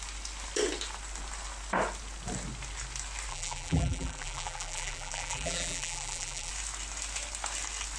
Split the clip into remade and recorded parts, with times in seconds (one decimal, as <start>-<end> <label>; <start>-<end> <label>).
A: 0.0-3.3 recorded; 3.3-6.5 remade; 6.5-8.0 recorded